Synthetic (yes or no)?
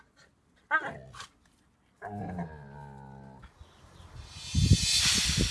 no